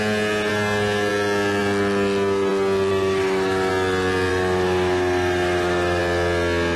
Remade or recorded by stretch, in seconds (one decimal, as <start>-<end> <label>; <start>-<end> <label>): 0.0-2.9 recorded; 2.9-3.7 remade; 3.7-4.3 recorded; 4.3-6.0 remade; 6.0-6.8 recorded

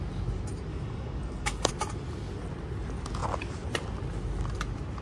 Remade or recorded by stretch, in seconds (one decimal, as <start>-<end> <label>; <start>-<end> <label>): 0.0-0.7 recorded; 0.7-1.7 remade; 1.7-5.0 recorded